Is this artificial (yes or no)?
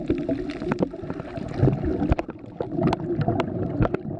no